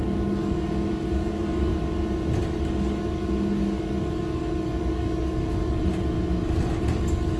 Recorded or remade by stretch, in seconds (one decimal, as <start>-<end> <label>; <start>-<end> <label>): 0.0-1.7 remade; 1.7-2.6 recorded; 2.6-5.8 remade; 5.8-7.0 recorded; 7.0-7.4 remade